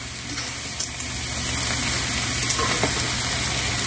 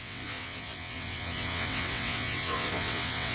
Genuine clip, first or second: first